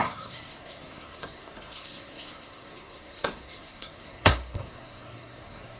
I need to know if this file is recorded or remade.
remade